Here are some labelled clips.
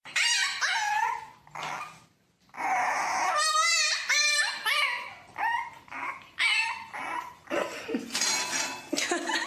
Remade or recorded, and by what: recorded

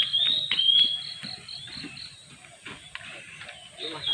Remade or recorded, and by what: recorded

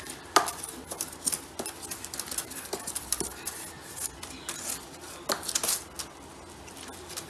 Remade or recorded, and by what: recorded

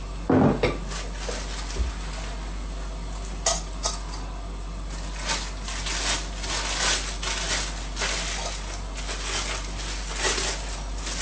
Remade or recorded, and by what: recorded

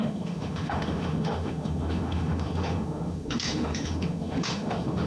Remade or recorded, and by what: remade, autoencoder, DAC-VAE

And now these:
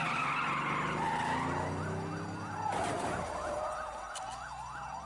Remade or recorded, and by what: recorded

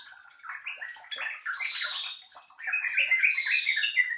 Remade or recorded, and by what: recorded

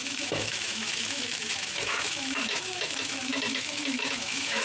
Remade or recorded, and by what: remade, autoencoder, DAC-VAE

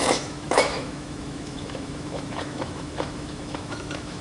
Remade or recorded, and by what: remade, autoencoder, DAC-VAE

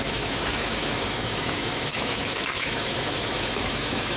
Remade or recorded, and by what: remade, autoencoder, DAC-VAE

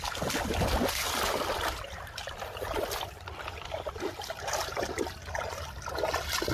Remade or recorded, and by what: recorded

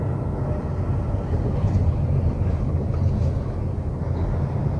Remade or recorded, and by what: recorded